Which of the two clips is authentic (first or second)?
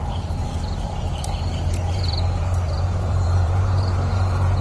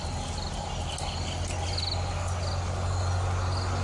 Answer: second